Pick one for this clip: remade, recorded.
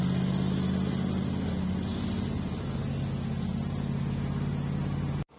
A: recorded